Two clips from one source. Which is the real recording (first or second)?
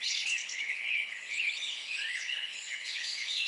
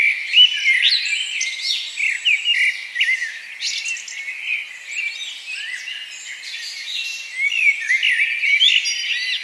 second